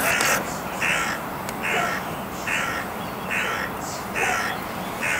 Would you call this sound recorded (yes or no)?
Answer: yes